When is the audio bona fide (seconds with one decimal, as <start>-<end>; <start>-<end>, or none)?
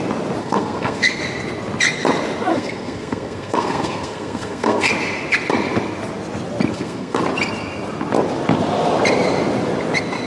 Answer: 0.0-0.4; 1.2-2.5; 4.9-6.7; 7.2-10.3